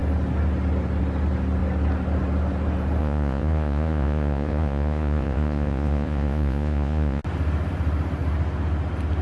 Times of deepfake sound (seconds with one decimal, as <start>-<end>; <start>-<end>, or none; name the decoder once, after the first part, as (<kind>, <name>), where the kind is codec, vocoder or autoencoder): 3.0-7.2 (vocoder, Vocos)